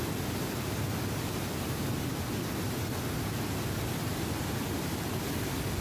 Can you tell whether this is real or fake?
real